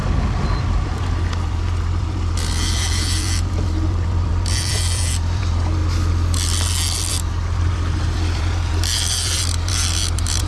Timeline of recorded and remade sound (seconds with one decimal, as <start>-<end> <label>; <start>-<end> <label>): 0.0-0.6 recorded; 0.6-5.8 remade; 5.8-7.1 recorded; 7.1-10.5 remade